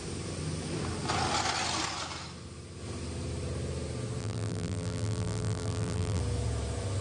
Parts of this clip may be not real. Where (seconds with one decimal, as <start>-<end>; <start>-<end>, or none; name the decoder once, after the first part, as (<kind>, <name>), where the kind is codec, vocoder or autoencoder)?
4.2-6.2 (vocoder, BigVGAN v2)